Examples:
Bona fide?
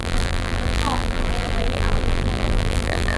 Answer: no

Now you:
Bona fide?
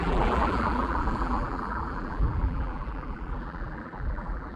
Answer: no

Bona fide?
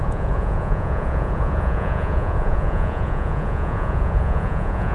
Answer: no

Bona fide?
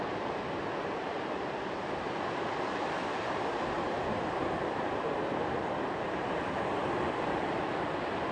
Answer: no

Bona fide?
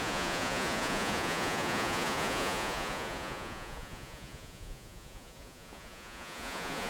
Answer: no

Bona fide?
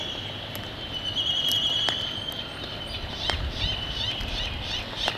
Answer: yes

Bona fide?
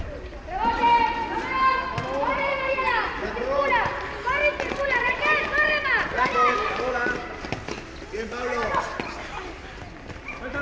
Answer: yes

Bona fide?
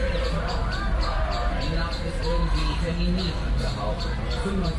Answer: yes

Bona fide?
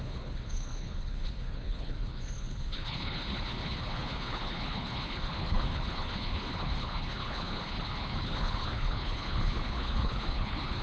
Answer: no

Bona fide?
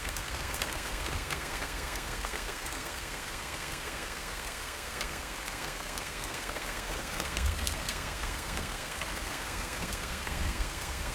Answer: no